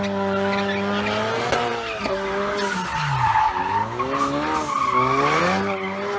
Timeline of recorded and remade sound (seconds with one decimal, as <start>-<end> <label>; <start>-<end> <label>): 0.0-6.2 recorded